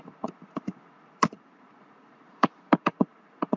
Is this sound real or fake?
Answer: fake